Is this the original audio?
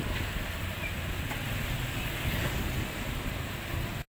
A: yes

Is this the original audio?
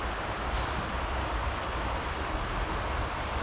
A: yes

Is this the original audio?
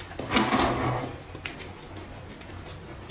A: yes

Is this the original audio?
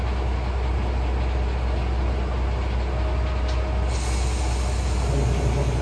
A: yes